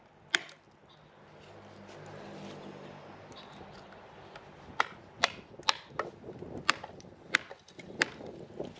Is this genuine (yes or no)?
yes